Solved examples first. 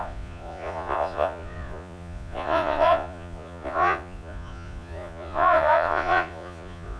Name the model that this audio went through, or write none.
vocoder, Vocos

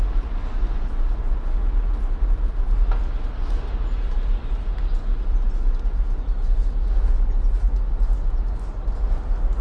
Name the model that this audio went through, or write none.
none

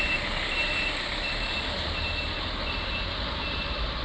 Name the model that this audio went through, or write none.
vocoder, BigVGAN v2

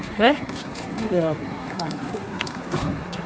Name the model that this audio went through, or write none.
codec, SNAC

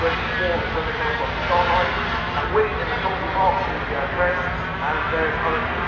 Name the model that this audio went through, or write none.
none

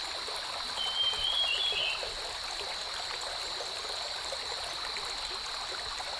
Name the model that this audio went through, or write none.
none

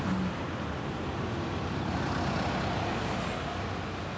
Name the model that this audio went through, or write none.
none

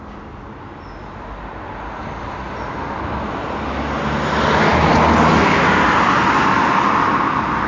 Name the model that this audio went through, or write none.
none